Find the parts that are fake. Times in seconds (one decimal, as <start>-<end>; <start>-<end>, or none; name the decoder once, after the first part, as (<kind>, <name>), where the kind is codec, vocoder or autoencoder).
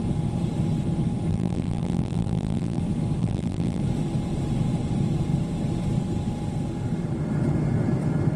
1.3-2.8 (vocoder, BigVGAN v2); 3.2-3.8